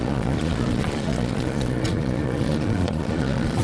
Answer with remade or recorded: remade